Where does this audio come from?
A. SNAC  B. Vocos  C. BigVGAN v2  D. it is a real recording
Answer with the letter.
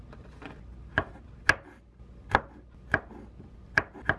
D